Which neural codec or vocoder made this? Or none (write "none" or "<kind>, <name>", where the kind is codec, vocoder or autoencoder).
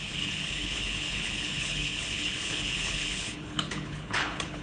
codec, HILCodec